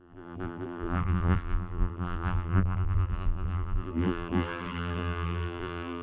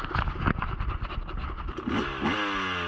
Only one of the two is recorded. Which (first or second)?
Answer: second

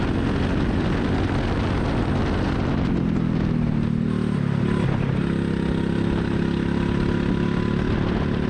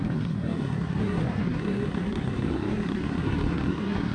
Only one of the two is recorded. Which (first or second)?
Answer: first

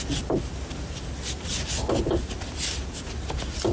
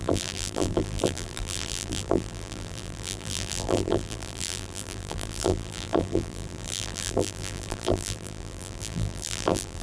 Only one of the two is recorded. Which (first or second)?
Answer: first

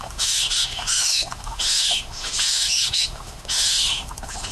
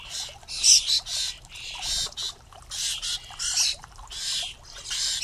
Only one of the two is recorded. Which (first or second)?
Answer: second